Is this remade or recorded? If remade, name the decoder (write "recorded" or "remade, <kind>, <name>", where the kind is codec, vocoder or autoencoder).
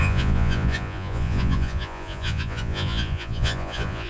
remade, vocoder, Vocos